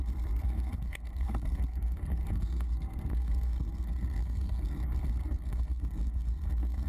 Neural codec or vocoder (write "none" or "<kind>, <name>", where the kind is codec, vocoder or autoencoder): codec, SNAC